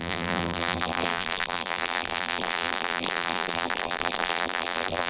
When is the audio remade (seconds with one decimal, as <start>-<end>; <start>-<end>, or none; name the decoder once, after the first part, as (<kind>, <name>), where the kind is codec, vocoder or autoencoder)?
0.0-5.1 (vocoder, BigVGAN v2)

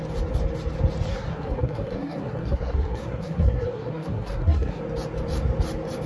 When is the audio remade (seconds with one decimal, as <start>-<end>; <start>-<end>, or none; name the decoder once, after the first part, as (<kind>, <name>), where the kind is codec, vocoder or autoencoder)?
1.1-4.8 (codec, SNAC)